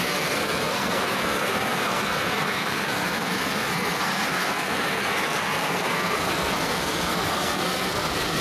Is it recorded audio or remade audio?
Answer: remade